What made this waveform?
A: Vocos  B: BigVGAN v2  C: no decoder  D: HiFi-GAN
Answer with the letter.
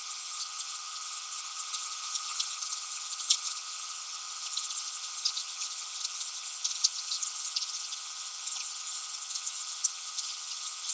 D